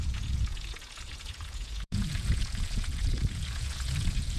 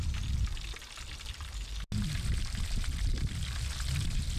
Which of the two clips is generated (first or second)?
first